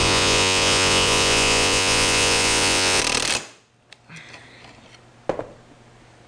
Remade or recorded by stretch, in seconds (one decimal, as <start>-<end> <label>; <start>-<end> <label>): 0.0-3.0 remade; 3.0-6.3 recorded